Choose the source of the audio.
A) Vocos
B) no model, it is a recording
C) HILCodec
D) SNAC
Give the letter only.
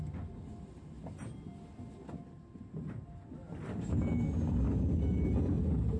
B